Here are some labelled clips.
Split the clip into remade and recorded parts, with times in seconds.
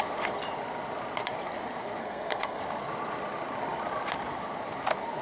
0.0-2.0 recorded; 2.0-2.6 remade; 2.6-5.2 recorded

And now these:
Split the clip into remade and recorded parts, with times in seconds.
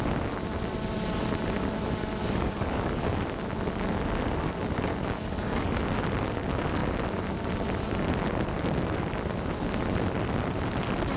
0.0-2.2 recorded; 2.2-3.1 remade; 3.1-4.9 recorded; 4.9-5.7 remade; 5.7-11.2 recorded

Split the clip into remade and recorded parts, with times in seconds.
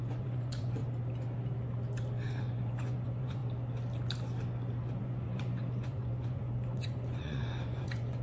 0.0-0.8 remade; 0.8-2.4 recorded; 2.4-3.4 remade; 3.4-5.0 recorded; 5.0-8.2 remade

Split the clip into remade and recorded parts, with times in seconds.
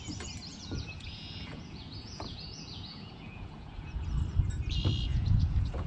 0.0-0.5 recorded; 0.5-4.0 remade; 4.0-5.1 recorded; 5.1-5.9 remade